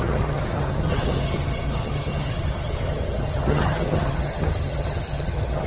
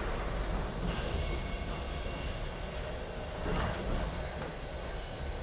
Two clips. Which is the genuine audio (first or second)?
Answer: second